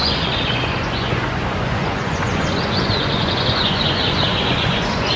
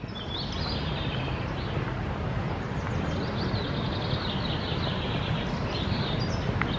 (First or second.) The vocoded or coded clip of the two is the first